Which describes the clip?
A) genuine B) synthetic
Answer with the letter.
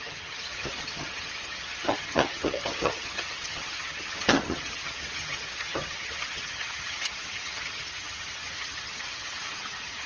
B